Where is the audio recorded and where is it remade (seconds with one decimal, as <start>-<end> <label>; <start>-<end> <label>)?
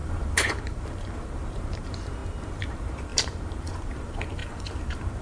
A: 0.0-5.2 remade